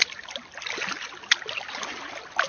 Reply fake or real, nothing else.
real